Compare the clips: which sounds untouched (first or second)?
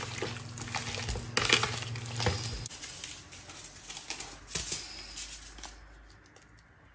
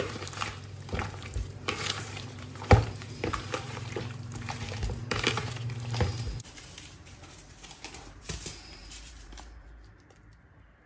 first